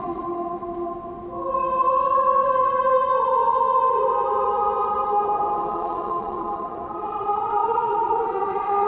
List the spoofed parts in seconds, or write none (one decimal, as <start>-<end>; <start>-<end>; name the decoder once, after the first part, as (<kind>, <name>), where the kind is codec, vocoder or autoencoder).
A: 0.0-0.6 (vocoder, Vocos); 5.7-8.9